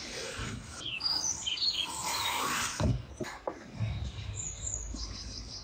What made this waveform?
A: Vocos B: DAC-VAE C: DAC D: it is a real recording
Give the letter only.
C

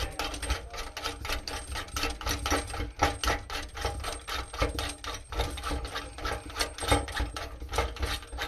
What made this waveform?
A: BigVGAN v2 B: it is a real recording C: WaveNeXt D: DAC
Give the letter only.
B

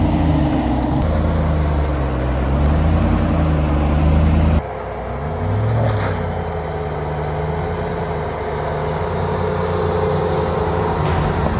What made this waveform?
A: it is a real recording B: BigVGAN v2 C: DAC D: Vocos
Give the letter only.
A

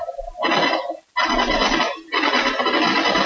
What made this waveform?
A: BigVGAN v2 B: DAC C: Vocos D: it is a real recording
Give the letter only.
D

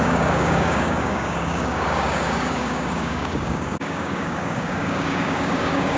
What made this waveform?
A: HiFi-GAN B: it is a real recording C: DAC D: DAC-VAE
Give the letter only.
C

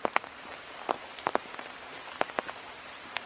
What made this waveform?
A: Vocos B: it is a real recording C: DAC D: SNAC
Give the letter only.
B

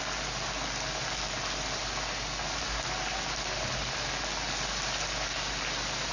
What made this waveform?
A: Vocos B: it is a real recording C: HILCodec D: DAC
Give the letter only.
B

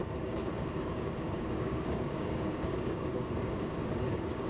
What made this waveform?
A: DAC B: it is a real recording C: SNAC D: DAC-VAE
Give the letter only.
A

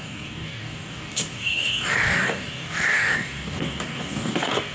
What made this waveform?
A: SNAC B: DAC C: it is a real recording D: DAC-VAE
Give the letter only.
B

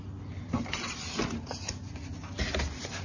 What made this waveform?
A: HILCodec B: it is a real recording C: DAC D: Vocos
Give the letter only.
B